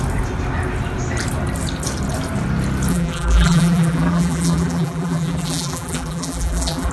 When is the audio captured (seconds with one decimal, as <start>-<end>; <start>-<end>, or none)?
0.0-2.9